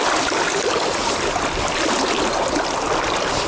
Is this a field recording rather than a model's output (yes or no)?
yes